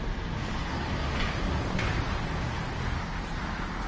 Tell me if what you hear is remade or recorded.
recorded